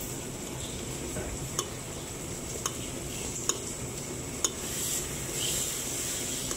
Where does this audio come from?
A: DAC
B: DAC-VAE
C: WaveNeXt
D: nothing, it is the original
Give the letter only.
D